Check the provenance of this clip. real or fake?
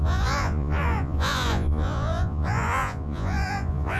fake